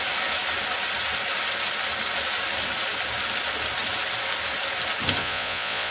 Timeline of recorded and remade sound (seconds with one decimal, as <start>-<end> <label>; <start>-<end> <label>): 0.0-5.2 recorded; 5.2-5.9 remade